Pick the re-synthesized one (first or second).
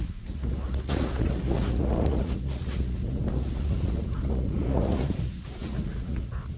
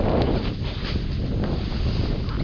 first